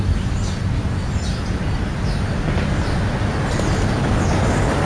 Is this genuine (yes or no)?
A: yes